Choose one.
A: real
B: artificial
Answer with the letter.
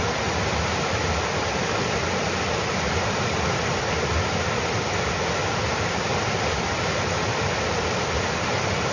A